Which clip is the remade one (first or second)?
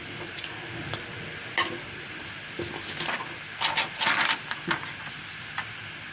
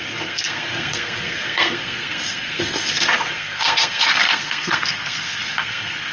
second